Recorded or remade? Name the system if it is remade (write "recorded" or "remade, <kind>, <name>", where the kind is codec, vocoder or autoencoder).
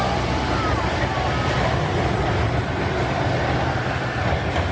recorded